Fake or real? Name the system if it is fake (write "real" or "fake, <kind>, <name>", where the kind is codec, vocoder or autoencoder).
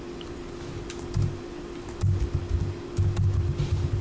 real